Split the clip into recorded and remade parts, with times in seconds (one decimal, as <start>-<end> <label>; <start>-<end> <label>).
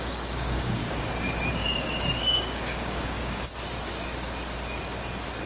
0.0-0.8 remade; 0.8-1.5 recorded; 1.5-3.5 remade; 3.5-5.5 recorded